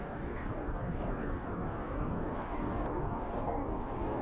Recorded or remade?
remade